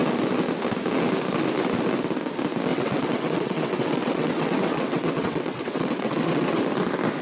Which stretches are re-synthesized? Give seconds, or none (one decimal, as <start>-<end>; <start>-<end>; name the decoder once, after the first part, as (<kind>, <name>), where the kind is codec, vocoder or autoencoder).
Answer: 2.7-6.6 (vocoder, WaveNeXt)